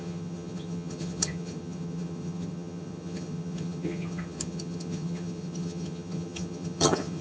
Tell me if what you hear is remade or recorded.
remade